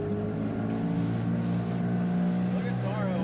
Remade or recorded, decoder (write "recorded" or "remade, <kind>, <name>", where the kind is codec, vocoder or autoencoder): recorded